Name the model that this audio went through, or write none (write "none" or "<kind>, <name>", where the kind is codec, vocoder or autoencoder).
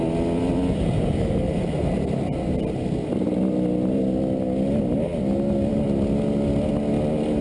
none